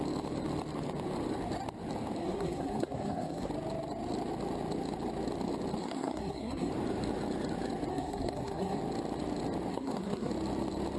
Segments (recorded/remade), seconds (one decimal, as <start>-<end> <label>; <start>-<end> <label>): 0.0-2.2 recorded; 2.2-3.5 remade; 3.5-5.8 recorded; 5.8-6.7 remade; 6.7-7.9 recorded; 7.9-8.8 remade; 8.8-9.7 recorded; 9.7-10.3 remade; 10.3-11.0 recorded